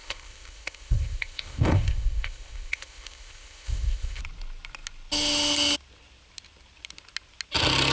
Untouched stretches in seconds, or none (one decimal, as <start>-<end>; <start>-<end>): 4.2-7.9